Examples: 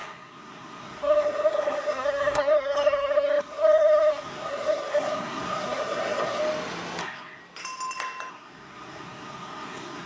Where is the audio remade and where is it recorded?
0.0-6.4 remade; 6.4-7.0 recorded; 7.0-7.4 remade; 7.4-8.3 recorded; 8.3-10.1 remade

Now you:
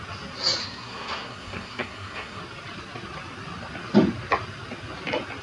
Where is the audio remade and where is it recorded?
0.0-0.6 recorded; 0.6-2.4 remade; 2.4-5.4 recorded

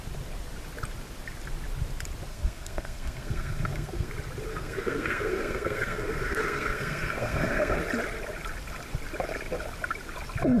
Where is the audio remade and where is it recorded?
0.0-2.3 recorded; 2.3-4.1 remade; 4.1-4.5 recorded; 4.5-7.8 remade; 7.8-10.6 recorded

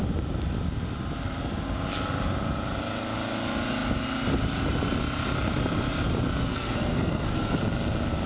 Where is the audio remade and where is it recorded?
0.0-6.5 recorded; 6.5-7.6 remade; 7.6-8.3 recorded